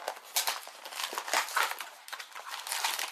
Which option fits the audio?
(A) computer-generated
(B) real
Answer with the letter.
B